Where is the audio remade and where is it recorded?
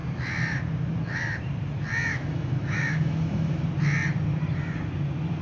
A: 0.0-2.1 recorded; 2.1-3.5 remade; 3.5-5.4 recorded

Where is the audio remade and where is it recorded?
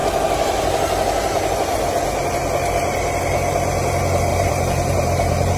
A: 0.0-0.6 remade; 0.6-4.3 recorded; 4.3-5.6 remade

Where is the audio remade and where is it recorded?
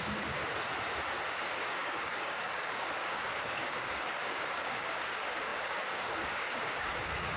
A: 0.0-0.4 remade; 0.4-1.3 recorded; 1.3-7.4 remade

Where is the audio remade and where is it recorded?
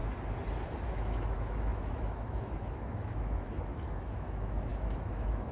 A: 0.0-0.9 recorded; 0.9-5.5 remade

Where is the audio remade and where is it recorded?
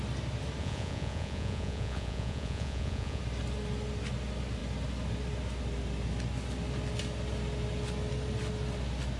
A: 0.0-0.6 recorded; 0.6-3.2 remade; 3.2-9.2 recorded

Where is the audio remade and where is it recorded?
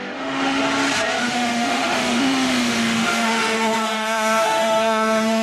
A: 0.0-0.6 remade; 0.6-1.2 recorded; 1.2-5.4 remade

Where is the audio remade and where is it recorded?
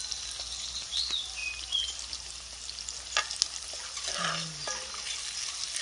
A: 0.0-5.8 recorded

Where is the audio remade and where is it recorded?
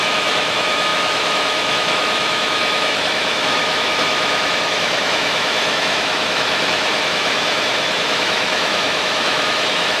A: 0.0-10.0 remade